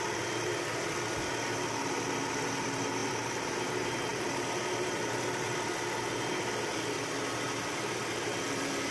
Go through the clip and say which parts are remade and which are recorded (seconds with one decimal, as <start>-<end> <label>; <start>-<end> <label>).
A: 0.0-8.9 recorded